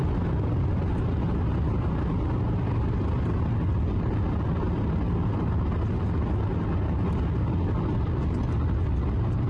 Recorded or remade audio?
recorded